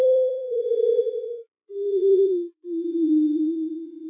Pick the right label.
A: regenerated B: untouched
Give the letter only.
A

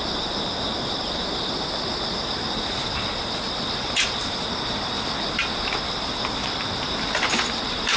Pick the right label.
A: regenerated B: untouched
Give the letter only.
B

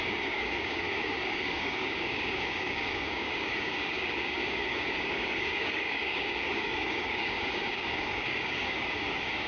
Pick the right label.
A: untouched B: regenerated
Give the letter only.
B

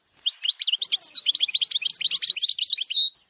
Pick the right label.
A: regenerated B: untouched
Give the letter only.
B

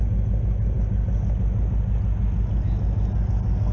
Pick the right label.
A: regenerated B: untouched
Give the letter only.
B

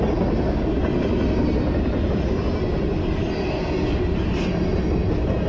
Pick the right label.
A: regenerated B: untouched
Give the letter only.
B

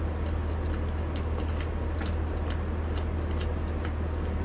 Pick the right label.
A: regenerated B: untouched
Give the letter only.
B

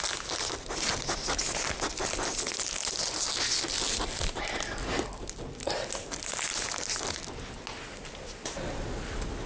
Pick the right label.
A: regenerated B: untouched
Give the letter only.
B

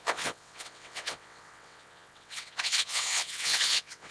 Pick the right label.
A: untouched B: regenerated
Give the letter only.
B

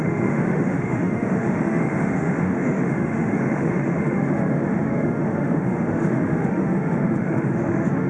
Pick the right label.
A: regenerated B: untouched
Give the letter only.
A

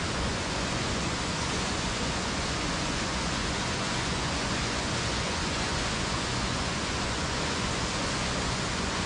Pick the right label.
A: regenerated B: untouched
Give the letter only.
A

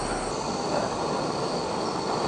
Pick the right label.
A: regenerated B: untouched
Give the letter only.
B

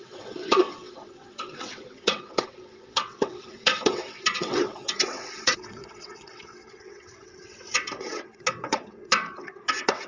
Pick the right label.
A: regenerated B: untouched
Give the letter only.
A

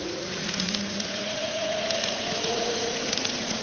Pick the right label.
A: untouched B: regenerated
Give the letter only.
B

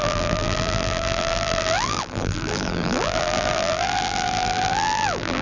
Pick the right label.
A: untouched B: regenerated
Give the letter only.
B